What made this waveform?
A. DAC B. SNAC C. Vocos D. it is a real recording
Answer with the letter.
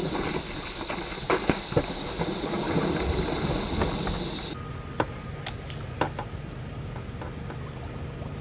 D